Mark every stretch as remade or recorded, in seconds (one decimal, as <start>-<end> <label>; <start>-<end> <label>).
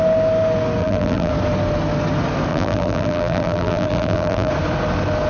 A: 0.0-0.8 recorded; 0.8-1.3 remade; 1.3-2.5 recorded; 2.5-4.5 remade; 4.5-5.3 recorded